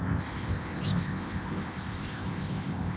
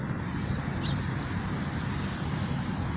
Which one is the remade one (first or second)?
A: first